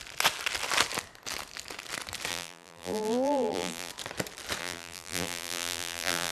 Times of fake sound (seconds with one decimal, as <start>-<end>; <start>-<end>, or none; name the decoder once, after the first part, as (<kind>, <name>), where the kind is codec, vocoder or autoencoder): 2.3-3.9 (vocoder, BigVGAN v2); 4.6-6.3